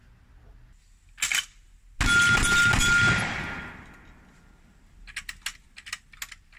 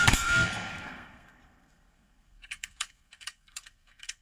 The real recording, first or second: first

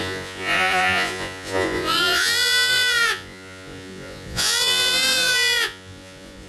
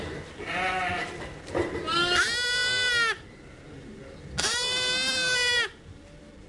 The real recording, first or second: second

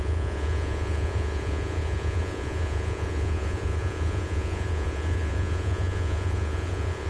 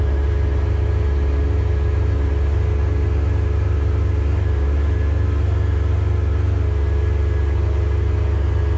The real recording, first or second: second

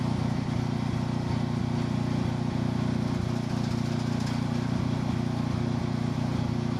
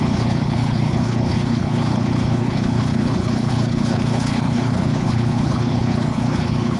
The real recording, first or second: first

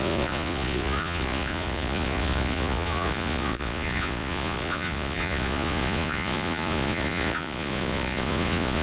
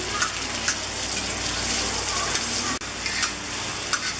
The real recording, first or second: second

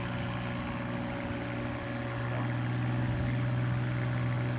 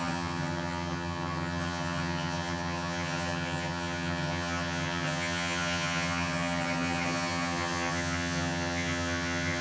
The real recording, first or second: first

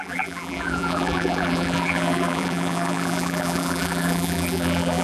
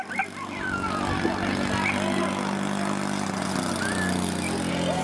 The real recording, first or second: second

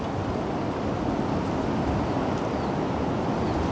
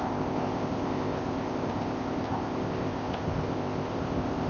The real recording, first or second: first